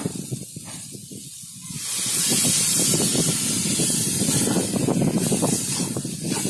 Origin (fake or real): real